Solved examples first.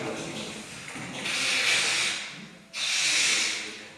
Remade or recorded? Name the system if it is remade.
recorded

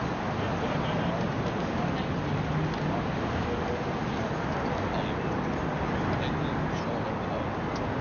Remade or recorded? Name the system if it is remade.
recorded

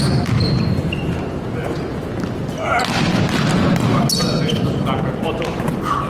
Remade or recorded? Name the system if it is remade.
recorded